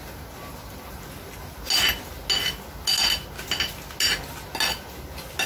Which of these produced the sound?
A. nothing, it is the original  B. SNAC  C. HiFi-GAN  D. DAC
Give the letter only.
A